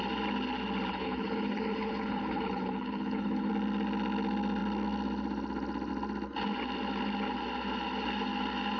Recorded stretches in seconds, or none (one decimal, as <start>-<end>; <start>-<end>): 0.0-0.9; 3.5-8.8